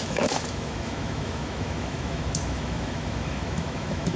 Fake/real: fake